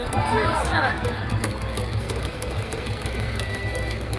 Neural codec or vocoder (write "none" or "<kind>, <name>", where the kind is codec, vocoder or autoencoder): codec, SNAC